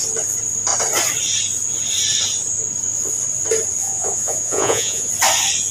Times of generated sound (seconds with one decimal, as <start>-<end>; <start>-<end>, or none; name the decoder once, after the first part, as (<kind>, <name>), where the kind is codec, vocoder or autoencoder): 3.8-5.1 (vocoder, Vocos)